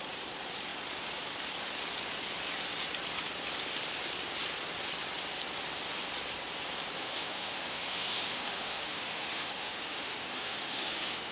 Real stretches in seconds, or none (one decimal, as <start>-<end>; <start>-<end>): 0.0-7.0